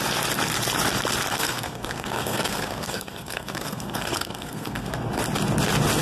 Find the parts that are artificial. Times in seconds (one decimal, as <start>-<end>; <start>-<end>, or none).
1.3-4.9